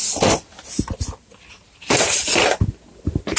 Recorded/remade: recorded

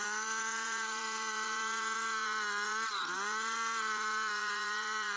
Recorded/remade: remade